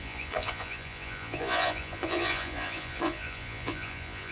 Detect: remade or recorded remade